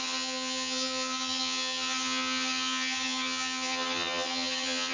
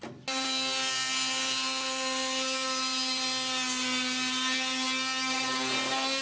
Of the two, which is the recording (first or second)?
second